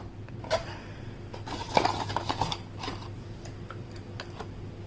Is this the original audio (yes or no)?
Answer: yes